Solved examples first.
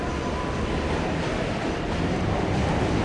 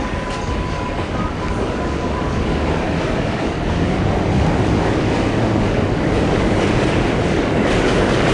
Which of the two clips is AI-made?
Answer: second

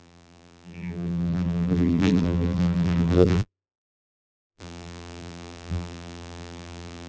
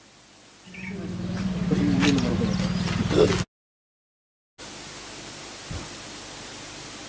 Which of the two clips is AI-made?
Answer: first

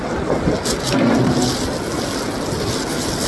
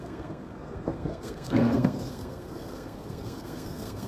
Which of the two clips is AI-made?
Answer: second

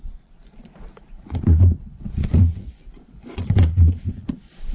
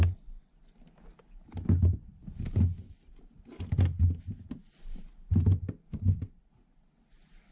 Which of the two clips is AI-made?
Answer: first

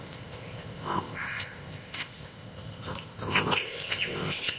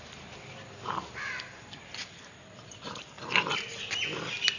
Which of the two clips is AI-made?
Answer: first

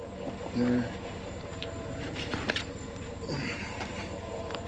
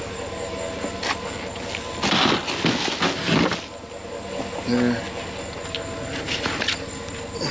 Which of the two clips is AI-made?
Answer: first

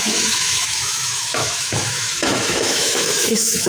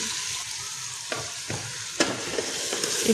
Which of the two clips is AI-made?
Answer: first